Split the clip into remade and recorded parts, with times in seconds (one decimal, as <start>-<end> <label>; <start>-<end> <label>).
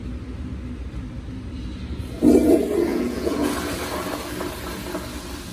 0.0-2.9 recorded; 2.9-3.5 remade; 3.5-5.5 recorded